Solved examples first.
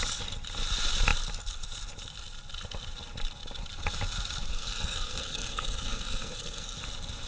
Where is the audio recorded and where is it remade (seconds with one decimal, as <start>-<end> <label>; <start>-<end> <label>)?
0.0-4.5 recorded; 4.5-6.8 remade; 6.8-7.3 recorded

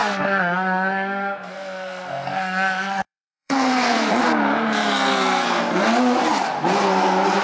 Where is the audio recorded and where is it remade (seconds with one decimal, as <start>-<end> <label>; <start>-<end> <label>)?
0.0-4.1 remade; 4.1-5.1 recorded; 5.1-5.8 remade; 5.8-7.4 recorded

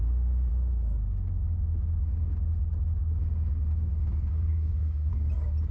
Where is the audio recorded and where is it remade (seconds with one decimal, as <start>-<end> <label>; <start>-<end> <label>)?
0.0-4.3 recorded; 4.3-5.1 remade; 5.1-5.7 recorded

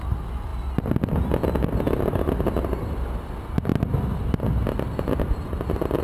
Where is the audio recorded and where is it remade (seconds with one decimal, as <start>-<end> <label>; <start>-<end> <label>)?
0.0-6.0 recorded